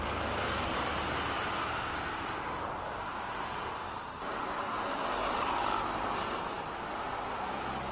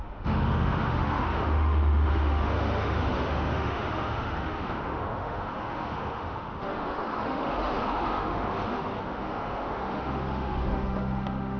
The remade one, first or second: second